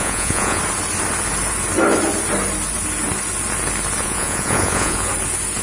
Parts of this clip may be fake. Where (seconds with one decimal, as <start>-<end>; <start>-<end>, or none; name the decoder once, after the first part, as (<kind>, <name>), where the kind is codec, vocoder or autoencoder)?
0.0-0.6 (vocoder, Vocos); 4.0-5.1